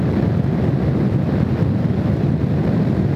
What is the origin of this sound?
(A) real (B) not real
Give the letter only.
A